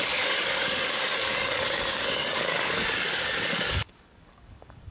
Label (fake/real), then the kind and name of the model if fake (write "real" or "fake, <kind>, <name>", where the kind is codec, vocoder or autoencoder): fake, codec, DAC